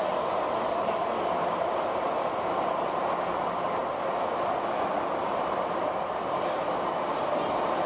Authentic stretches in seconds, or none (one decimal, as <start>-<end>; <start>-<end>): 0.0-1.1; 2.7-7.9